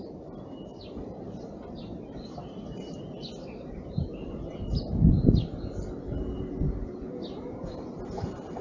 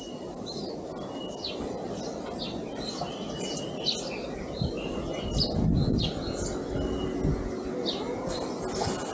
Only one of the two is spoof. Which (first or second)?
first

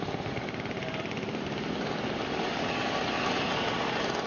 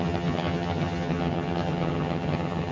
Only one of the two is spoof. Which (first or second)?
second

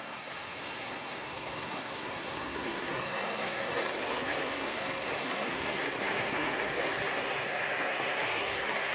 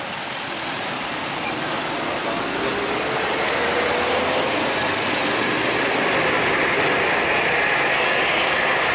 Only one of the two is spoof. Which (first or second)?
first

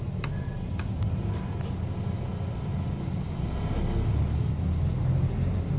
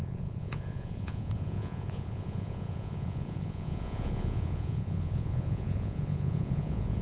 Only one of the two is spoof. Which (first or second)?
second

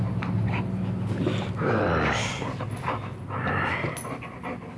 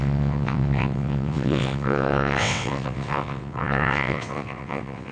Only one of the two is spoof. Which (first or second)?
second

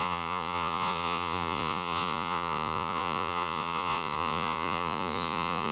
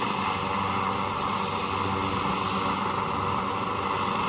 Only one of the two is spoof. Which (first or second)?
first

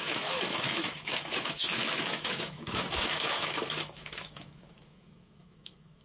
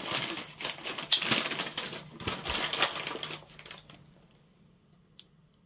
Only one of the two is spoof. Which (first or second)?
first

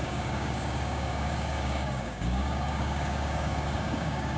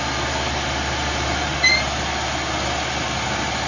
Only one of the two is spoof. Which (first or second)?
first